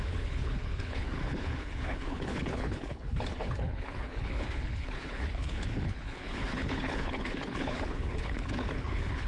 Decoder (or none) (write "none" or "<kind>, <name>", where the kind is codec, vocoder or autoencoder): codec, HILCodec